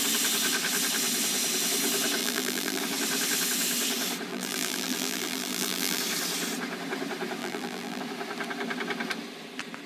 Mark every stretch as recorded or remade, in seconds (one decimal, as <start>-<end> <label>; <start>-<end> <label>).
0.0-2.2 recorded; 2.2-2.8 remade; 2.8-4.3 recorded; 4.3-6.0 remade; 6.0-7.4 recorded; 7.4-8.0 remade; 8.0-9.9 recorded